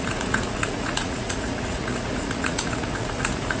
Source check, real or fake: fake